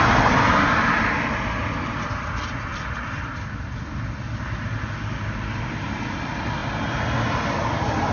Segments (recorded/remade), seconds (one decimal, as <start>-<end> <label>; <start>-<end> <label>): 0.0-8.1 recorded